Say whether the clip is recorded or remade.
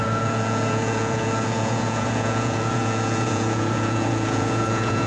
remade